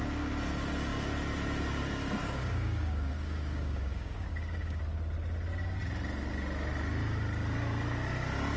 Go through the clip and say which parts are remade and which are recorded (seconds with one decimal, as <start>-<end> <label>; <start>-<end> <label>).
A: 0.0-2.2 recorded; 2.2-4.8 remade; 4.8-8.6 recorded